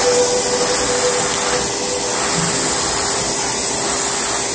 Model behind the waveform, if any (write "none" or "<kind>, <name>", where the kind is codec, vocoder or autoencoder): none